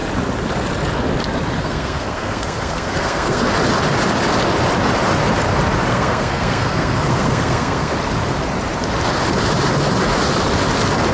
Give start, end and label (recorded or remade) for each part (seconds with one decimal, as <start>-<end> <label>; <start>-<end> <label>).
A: 0.0-1.6 recorded; 1.6-3.5 remade; 3.5-5.9 recorded; 5.9-7.9 remade; 7.9-11.1 recorded